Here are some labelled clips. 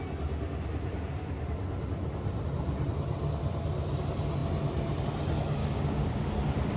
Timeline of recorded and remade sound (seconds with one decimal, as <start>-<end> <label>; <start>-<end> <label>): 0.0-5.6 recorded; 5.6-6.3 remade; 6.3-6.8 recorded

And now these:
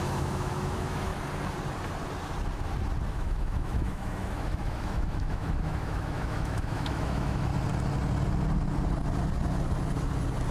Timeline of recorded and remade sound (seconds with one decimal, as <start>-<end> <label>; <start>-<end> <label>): 0.0-1.1 remade; 1.1-3.1 recorded; 3.1-7.5 remade; 7.5-10.5 recorded

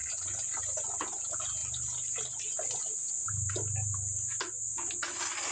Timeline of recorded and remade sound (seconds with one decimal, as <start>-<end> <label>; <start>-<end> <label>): 0.0-5.5 recorded